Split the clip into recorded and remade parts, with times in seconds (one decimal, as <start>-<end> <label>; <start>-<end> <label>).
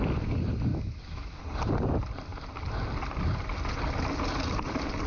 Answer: 0.0-0.7 recorded; 0.7-1.4 remade; 1.4-5.1 recorded